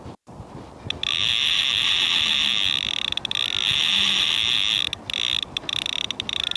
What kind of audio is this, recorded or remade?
recorded